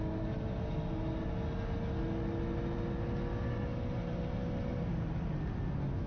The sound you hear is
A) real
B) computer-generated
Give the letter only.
A